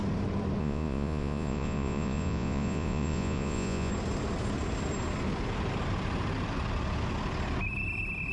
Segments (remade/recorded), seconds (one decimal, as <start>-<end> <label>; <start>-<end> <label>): 0.0-0.6 recorded; 0.6-3.9 remade; 3.9-8.3 recorded